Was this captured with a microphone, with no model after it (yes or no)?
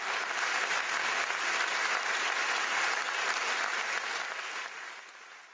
yes